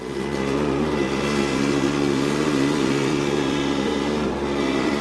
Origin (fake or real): fake